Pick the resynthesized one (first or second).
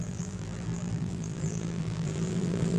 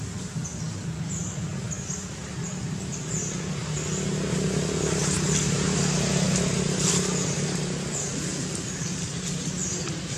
first